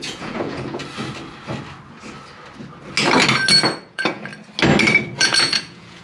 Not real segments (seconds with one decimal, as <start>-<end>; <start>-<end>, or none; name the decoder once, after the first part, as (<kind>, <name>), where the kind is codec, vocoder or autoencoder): 0.0-0.8 (vocoder, Vocos); 3.8-4.3; 5.2-6.0